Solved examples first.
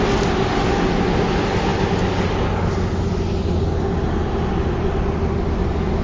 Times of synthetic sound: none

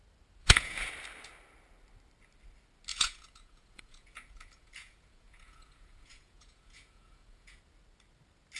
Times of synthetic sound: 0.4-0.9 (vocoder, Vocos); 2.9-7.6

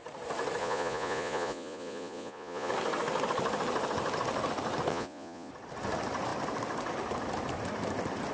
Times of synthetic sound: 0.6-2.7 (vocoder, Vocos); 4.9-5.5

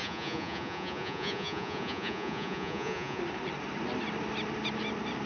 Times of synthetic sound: 0.0-3.2 (vocoder, Vocos)

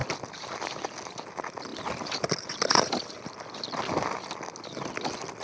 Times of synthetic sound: none